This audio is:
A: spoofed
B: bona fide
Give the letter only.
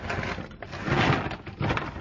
B